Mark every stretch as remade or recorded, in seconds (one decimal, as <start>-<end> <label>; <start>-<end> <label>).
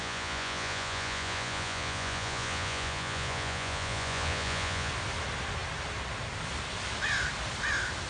0.0-4.9 remade; 4.9-8.1 recorded